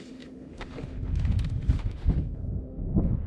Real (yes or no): no